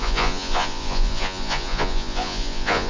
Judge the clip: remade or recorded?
remade